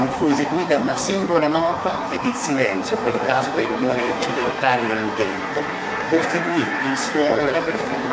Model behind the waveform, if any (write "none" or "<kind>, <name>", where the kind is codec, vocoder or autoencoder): codec, SNAC